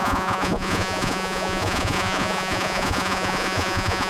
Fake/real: fake